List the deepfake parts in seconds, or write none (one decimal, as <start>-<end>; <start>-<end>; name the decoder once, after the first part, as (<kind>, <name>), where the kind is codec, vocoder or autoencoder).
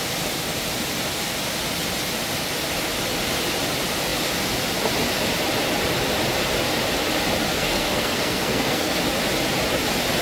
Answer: 7.5-9.0 (codec, SNAC)